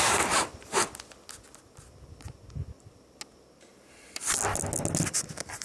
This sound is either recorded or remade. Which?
recorded